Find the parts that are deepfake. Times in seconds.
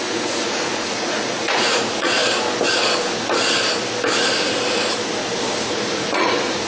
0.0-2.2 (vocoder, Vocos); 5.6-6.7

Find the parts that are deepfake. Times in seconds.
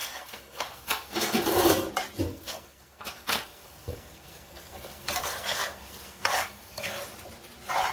0.0-1.9 (codec, SNAC); 2.3-7.0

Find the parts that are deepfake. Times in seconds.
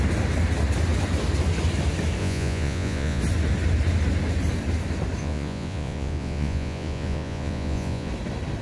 2.2-3.2 (vocoder, Vocos); 5.2-8.1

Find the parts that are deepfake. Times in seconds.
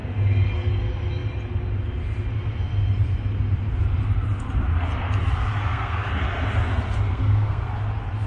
5.6-6.1 (codec, SNAC); 7.1-7.7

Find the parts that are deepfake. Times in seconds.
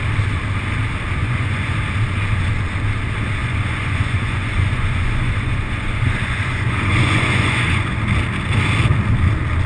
1.2-1.8 (vocoder, Vocos); 3.4-8.0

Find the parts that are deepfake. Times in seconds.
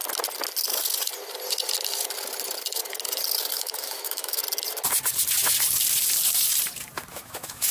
3.5-4.4 (autoencoder, DAC-VAE); 7.1-7.7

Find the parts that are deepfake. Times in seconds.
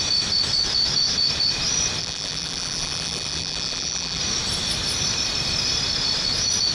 2.0-4.2 (vocoder, BigVGAN v2)